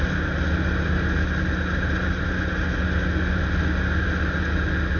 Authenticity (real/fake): real